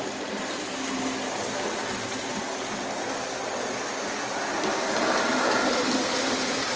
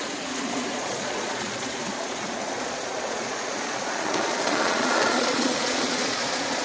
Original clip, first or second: first